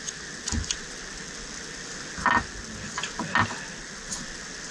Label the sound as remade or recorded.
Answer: recorded